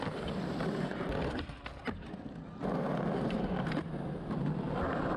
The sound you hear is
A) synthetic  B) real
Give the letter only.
B